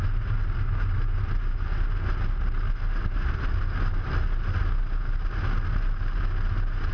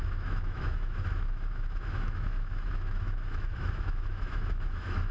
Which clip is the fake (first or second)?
second